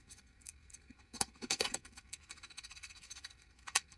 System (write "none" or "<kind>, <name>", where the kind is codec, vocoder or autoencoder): codec, SNAC